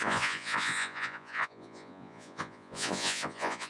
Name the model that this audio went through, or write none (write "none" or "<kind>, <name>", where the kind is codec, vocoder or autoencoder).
vocoder, Vocos